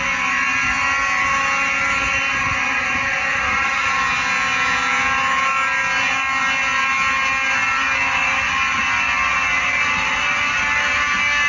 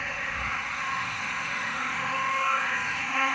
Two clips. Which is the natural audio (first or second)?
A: first